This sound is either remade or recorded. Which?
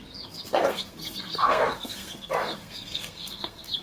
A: remade